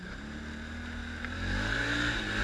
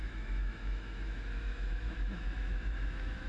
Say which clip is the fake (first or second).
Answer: second